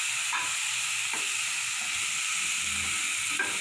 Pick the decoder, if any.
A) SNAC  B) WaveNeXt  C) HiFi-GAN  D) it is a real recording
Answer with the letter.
D